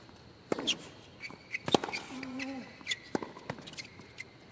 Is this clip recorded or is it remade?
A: recorded